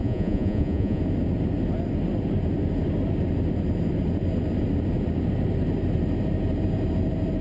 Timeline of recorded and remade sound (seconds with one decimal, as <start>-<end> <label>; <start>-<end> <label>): 0.0-1.0 remade; 1.0-7.4 recorded